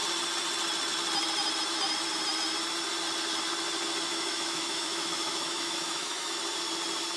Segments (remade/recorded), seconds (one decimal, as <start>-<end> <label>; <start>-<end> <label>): 0.0-4.1 recorded; 4.1-6.3 remade; 6.3-7.2 recorded